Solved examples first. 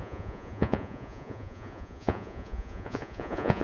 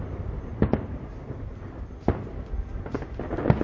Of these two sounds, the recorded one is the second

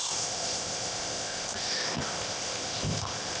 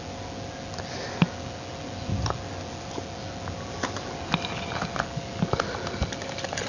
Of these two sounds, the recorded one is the second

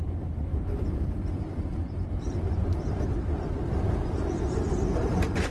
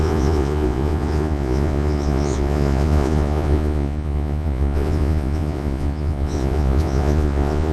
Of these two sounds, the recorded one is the first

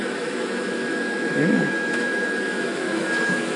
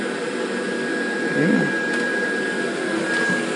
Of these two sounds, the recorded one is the second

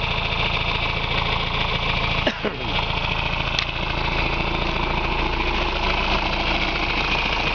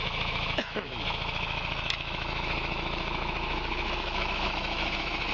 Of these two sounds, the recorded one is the first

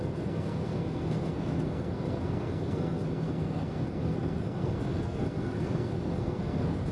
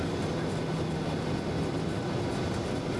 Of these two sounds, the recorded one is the second